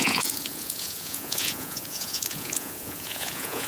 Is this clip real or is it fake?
fake